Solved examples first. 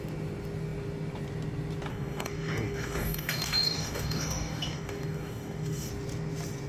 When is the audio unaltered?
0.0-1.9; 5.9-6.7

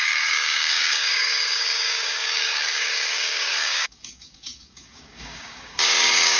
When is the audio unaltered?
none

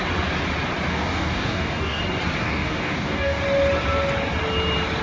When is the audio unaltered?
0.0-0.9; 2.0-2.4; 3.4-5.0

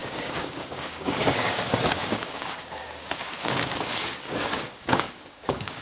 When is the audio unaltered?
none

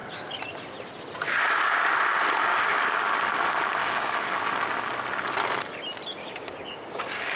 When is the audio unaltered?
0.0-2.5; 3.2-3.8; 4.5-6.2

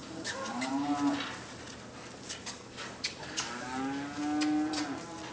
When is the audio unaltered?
0.7-2.4; 4.2-5.3